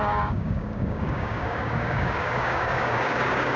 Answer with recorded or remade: remade